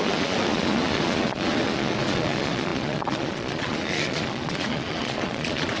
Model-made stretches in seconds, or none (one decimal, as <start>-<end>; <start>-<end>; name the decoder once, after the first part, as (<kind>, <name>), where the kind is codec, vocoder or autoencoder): 0.0-5.8 (vocoder, Vocos)